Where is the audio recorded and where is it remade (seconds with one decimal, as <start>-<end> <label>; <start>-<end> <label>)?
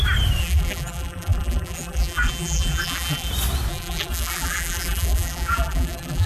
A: 0.0-0.4 recorded; 0.4-3.3 remade; 3.3-3.7 recorded; 3.7-6.3 remade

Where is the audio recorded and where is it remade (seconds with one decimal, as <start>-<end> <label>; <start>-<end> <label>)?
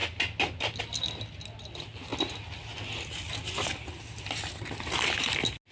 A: 0.0-5.7 recorded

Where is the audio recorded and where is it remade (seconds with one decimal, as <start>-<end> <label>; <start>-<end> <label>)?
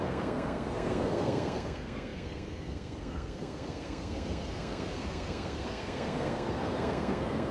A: 0.0-7.5 remade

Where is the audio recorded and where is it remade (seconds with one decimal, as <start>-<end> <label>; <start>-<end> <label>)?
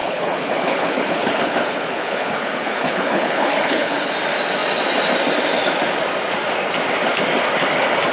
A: 0.0-4.1 remade; 4.1-8.1 recorded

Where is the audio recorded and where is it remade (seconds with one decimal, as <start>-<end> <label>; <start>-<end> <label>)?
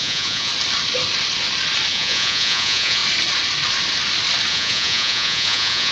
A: 0.0-0.5 remade; 0.5-1.9 recorded; 1.9-3.0 remade; 3.0-4.5 recorded; 4.5-5.9 remade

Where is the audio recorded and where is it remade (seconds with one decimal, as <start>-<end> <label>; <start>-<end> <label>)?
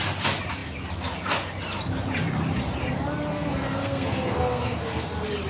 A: 0.0-3.3 recorded; 3.3-5.1 remade; 5.1-5.5 recorded